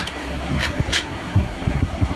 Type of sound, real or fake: fake